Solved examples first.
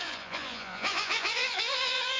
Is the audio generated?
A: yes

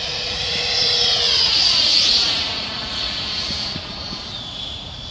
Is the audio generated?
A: yes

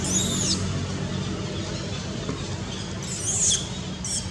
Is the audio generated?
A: no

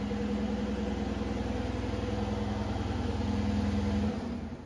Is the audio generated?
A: no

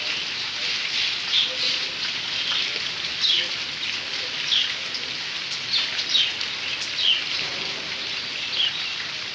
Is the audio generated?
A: no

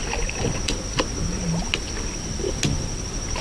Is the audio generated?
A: no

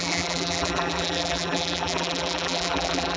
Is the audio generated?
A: yes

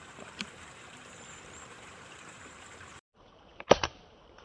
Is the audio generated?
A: yes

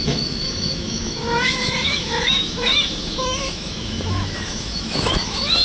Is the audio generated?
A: yes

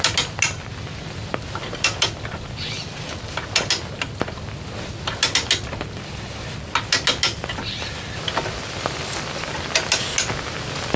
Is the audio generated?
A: no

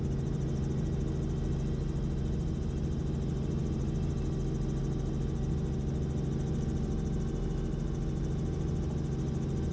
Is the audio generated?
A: no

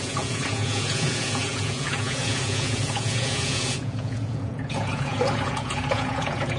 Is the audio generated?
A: yes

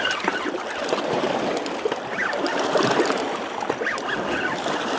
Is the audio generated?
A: no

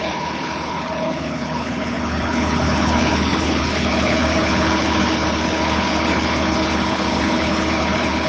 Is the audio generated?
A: yes